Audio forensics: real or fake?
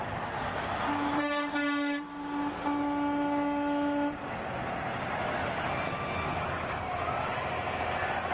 real